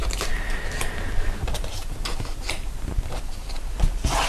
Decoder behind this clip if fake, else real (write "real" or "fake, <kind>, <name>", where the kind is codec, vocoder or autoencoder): real